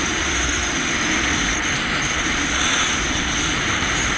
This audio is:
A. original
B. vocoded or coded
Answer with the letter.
A